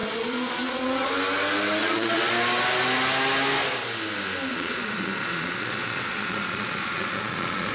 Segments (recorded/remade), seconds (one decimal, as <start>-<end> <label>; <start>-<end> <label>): 0.0-1.1 remade; 1.1-1.8 recorded; 1.8-2.3 remade; 2.3-4.5 recorded; 4.5-7.7 remade